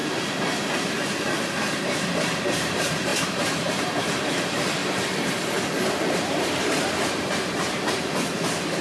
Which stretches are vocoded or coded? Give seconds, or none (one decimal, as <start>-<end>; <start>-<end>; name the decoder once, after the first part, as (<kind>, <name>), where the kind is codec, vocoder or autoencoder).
0.7-4.8 (vocoder, BigVGAN v2); 6.0-8.8